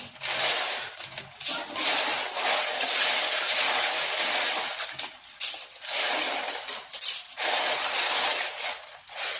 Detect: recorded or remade recorded